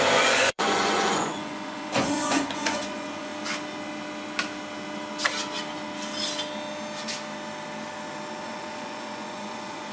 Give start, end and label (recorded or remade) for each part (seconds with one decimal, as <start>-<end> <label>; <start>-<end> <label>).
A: 0.0-3.3 remade; 3.3-8.4 recorded; 8.4-9.9 remade